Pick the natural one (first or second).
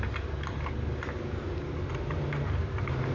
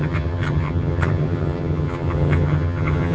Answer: first